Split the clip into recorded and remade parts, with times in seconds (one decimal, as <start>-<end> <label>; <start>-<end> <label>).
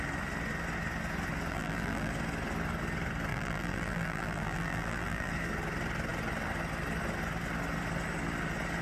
0.0-1.5 recorded; 1.5-2.1 remade; 2.1-3.3 recorded; 3.3-5.3 remade; 5.3-8.8 recorded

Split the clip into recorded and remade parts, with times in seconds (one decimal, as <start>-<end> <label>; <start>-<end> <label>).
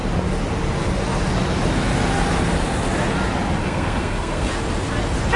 0.0-3.6 recorded; 3.6-4.5 remade; 4.5-5.4 recorded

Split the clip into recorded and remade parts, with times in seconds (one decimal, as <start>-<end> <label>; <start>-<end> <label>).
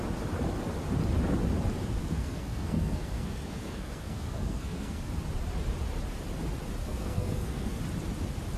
0.0-2.0 recorded; 2.0-5.0 remade; 5.0-6.8 recorded; 6.8-7.8 remade; 7.8-8.6 recorded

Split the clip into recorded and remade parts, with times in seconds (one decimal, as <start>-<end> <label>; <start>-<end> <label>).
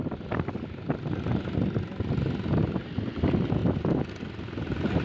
0.0-5.0 recorded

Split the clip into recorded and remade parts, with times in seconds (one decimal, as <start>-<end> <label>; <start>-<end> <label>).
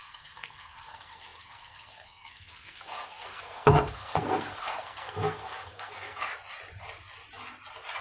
0.0-6.3 remade; 6.3-8.0 recorded